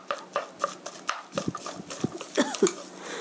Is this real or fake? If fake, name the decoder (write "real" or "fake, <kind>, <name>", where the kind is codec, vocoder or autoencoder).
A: real